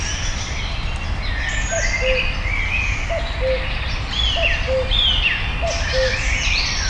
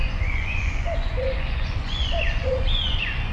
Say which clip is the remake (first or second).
second